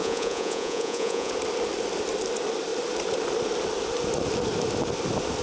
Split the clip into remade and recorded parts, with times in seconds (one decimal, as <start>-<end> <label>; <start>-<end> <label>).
0.0-1.3 remade; 1.3-5.4 recorded